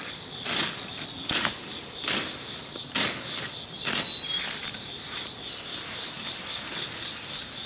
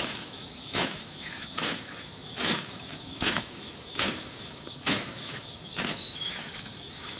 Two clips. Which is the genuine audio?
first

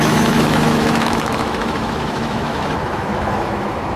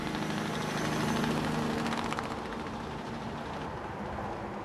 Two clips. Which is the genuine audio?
second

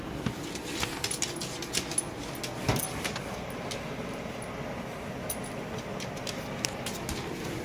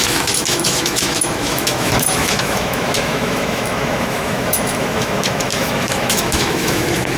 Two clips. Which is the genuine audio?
first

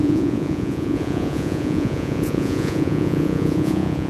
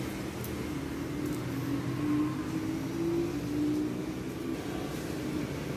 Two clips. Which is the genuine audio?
second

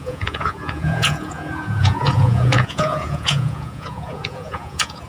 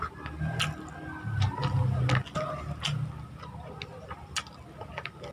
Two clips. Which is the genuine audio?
second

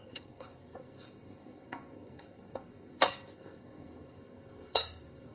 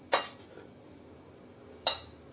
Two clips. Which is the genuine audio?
second